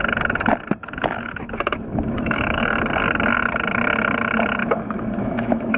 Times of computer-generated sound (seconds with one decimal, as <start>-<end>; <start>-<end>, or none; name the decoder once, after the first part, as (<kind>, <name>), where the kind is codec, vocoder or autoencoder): 0.8-2.6 (autoencoder, DAC-VAE); 4.6-5.8